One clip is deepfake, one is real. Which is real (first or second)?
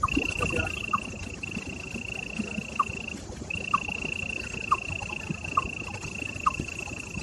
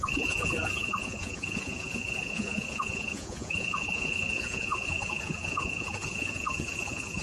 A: first